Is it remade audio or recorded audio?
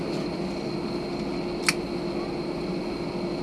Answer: recorded